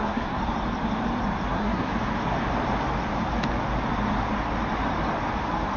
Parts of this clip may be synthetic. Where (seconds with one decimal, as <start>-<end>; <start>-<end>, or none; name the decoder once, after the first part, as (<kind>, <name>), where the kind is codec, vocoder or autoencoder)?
0.0-0.4 (codec, SNAC); 1.5-1.9